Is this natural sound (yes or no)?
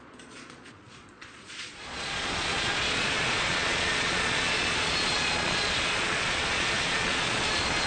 no